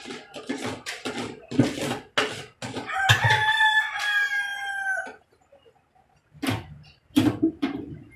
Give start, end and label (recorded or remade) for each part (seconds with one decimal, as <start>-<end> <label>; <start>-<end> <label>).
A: 0.0-8.2 recorded

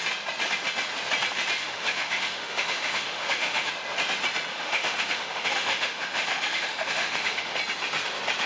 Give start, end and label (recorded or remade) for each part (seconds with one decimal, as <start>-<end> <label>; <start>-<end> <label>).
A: 0.0-1.6 recorded; 1.6-3.7 remade; 3.7-4.5 recorded; 4.5-7.6 remade; 7.6-8.5 recorded

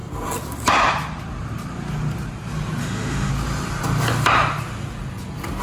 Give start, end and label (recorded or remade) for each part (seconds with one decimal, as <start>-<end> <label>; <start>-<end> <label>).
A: 0.0-2.8 recorded; 2.8-3.3 remade; 3.3-5.6 recorded

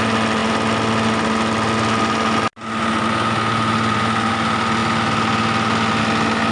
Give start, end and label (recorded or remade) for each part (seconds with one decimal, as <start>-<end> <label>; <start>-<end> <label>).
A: 0.0-6.5 recorded